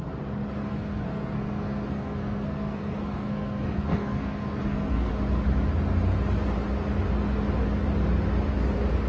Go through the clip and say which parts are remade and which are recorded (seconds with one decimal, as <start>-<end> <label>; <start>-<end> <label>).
0.0-0.7 recorded; 0.7-5.1 remade; 5.1-9.1 recorded